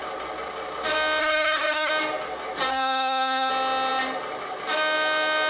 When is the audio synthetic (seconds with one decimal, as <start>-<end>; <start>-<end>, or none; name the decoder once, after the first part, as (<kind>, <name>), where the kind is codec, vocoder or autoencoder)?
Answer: 1.2-1.9 (codec, SNAC); 2.7-3.5